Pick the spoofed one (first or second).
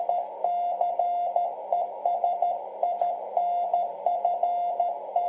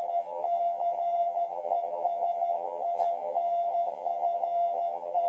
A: second